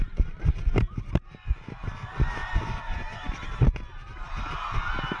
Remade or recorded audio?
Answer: recorded